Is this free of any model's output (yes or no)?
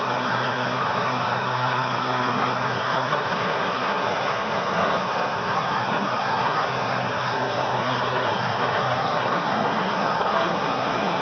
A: no